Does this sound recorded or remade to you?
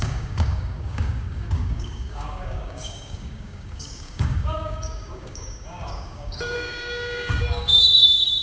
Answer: remade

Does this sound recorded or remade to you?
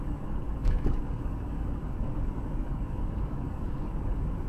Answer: remade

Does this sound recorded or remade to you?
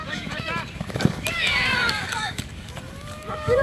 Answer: remade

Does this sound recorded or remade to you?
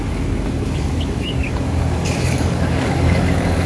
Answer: remade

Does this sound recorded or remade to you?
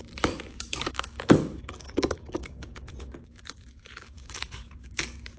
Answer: remade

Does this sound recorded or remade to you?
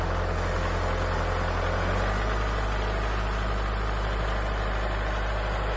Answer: recorded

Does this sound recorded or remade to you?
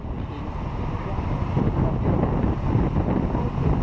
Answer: recorded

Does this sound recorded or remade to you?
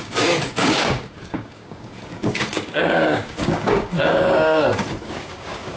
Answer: remade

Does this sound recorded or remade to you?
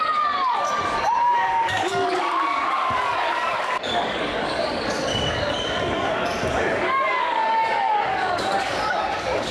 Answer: remade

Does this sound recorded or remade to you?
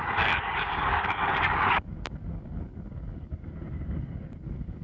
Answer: remade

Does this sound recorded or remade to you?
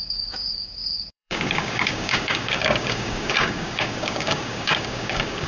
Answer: remade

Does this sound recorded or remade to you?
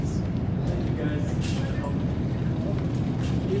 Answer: recorded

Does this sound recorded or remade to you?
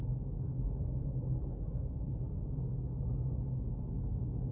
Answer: remade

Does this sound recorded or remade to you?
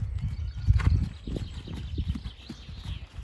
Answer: recorded